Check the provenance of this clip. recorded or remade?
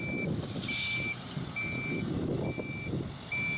recorded